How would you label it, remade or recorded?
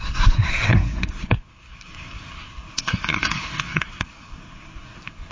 remade